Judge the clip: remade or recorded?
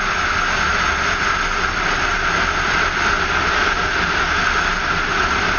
recorded